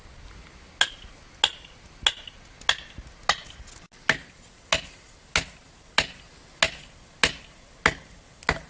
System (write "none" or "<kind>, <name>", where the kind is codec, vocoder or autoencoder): none